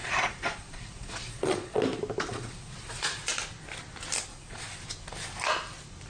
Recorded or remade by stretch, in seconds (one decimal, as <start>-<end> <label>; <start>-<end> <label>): 0.0-1.8 remade; 1.8-2.3 recorded; 2.3-3.2 remade; 3.2-4.3 recorded; 4.3-4.8 remade; 4.8-6.1 recorded